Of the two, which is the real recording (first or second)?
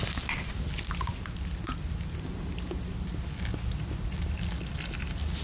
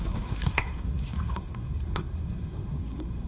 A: first